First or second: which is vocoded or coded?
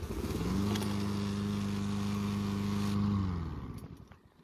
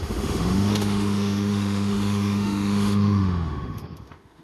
second